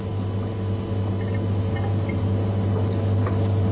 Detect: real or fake real